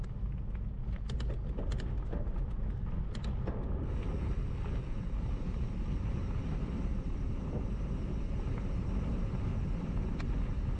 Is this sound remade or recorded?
recorded